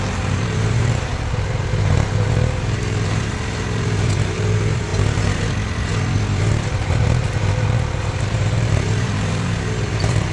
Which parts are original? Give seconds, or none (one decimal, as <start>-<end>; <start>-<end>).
4.9-6.4